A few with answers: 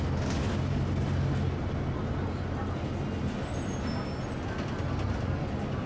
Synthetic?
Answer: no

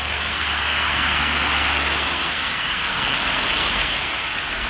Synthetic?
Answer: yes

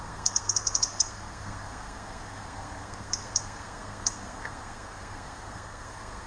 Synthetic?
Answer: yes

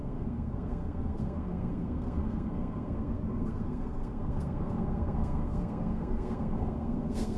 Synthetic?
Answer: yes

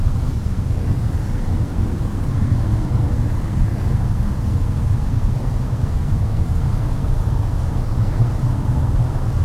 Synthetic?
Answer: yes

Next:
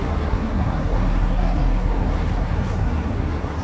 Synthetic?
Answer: yes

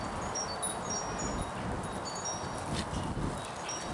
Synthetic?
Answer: no